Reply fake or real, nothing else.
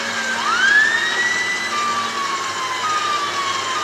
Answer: real